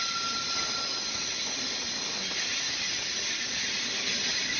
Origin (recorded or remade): recorded